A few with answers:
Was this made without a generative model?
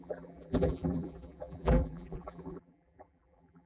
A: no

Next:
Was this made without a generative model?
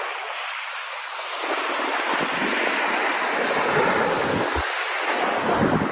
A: yes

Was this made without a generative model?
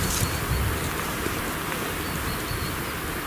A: yes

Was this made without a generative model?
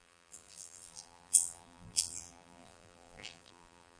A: no